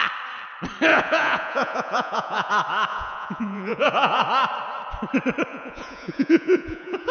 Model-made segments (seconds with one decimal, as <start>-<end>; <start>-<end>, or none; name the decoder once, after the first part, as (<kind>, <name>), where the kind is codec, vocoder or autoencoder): 0.9-2.5 (vocoder, Vocos); 2.9-4.2; 5.5-7.1